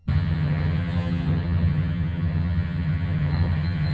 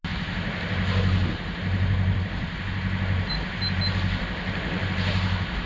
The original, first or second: second